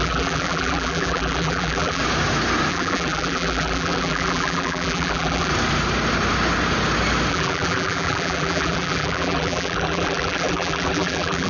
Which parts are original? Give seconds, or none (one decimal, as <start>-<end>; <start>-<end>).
2.0-2.7; 5.5-7.3